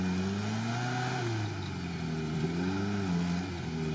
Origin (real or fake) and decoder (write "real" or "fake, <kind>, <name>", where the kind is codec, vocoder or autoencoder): real